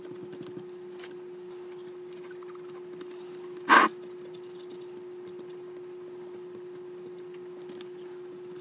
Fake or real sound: real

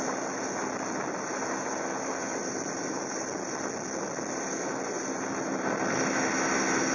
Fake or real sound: real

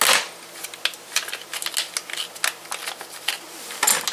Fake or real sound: real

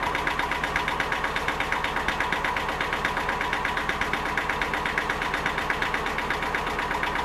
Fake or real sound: real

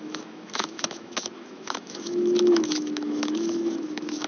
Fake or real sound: fake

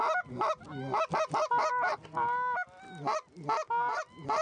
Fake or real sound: real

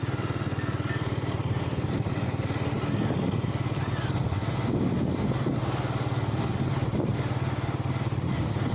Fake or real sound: real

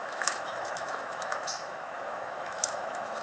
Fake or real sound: fake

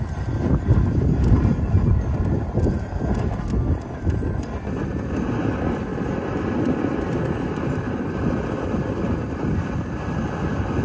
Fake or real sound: real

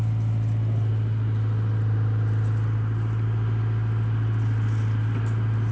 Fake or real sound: real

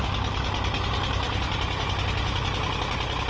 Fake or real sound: real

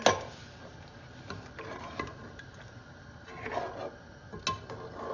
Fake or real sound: real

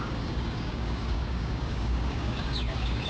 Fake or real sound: fake